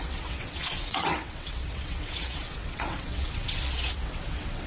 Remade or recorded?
remade